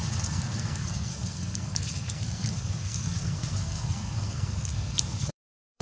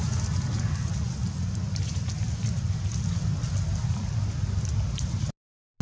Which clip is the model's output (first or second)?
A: first